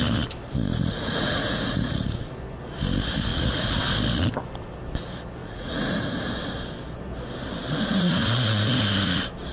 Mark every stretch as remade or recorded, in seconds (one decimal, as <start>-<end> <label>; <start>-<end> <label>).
0.0-0.8 recorded; 0.8-2.3 remade; 2.3-3.3 recorded; 3.3-3.8 remade; 3.8-5.4 recorded; 5.4-6.0 remade; 6.0-7.9 recorded; 7.9-8.6 remade; 8.6-9.5 recorded